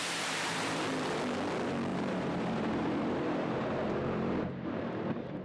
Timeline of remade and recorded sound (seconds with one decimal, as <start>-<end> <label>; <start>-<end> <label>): 0.0-0.8 remade; 0.8-1.9 recorded; 1.9-5.4 remade